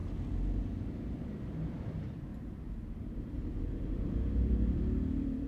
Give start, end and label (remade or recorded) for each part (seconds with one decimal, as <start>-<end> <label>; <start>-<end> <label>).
0.0-1.9 recorded; 1.9-2.3 remade; 2.3-3.0 recorded; 3.0-5.5 remade